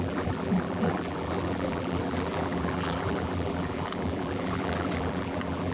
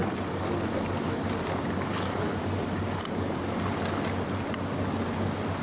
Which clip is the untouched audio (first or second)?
second